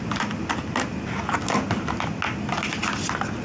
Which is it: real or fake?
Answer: real